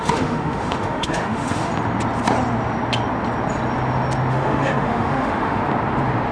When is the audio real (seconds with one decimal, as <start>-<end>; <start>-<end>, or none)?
1.7-4.3; 5.6-6.3